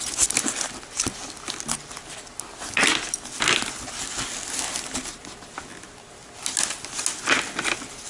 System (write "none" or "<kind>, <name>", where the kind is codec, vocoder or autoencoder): none